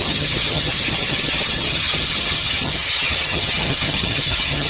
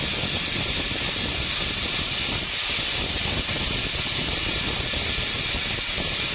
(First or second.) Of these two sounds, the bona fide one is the second